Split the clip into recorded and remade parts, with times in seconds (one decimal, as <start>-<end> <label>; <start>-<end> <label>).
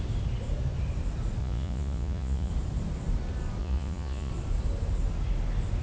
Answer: 0.0-1.4 recorded; 1.4-2.5 remade; 2.5-3.6 recorded; 3.6-4.3 remade; 4.3-5.8 recorded